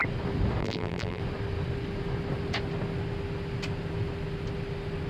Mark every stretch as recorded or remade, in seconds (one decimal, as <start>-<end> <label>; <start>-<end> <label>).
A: 0.0-0.6 recorded; 0.6-1.2 remade; 1.2-5.1 recorded